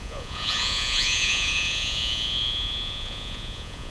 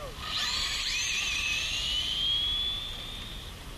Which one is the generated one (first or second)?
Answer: first